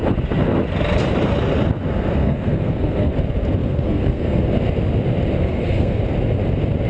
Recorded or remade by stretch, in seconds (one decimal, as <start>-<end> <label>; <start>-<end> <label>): 0.0-2.2 recorded; 2.2-3.1 remade; 3.1-3.6 recorded; 3.6-4.4 remade; 4.4-5.4 recorded; 5.4-6.0 remade; 6.0-6.9 recorded